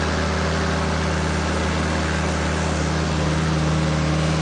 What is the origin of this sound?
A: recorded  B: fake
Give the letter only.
A